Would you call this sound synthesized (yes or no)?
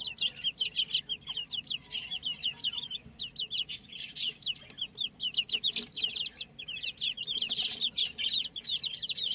no